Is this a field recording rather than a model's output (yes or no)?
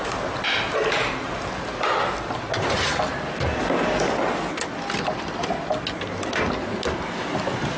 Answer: yes